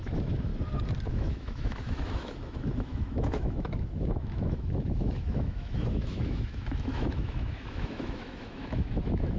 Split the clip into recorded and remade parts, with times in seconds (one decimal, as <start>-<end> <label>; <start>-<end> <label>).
0.0-0.5 remade; 0.5-1.1 recorded; 1.1-9.4 remade